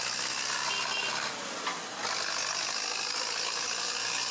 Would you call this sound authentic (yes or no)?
yes